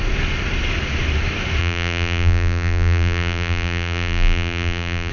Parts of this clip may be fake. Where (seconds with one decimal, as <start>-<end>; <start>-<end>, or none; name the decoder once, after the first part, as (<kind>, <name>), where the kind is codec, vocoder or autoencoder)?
1.6-5.1 (vocoder, BigVGAN v2)